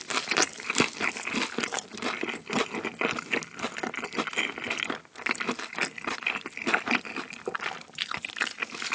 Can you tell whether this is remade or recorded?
recorded